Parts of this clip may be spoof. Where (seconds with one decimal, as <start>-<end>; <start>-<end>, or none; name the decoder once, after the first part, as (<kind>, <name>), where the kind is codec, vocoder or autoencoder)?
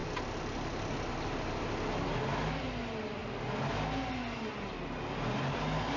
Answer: none